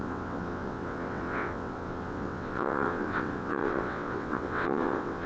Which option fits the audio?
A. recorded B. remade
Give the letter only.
B